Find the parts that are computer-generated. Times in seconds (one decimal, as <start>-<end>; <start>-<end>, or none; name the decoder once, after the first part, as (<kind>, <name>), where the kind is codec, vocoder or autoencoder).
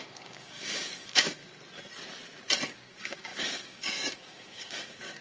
0.0-1.4 (codec, DAC); 2.7-5.2